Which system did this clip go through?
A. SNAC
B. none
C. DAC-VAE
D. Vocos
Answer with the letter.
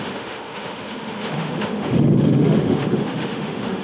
C